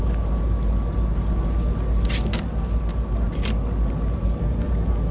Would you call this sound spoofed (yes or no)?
no